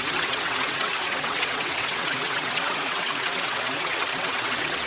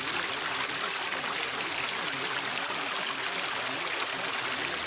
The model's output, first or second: first